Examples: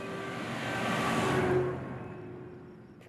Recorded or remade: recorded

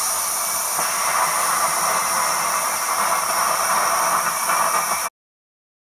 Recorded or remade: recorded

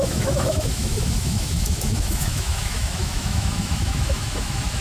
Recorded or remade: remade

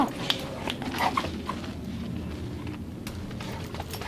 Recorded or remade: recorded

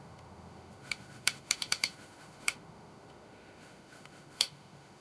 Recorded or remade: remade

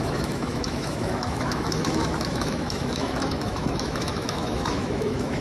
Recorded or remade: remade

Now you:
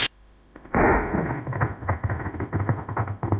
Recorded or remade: remade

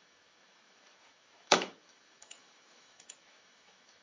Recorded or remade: remade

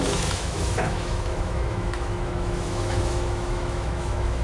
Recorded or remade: remade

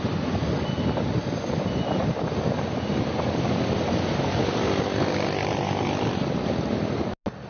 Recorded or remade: recorded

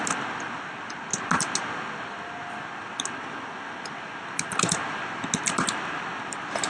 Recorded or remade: recorded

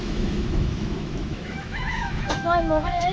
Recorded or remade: remade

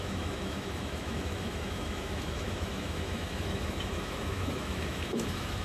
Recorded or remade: remade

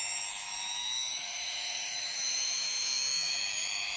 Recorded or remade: remade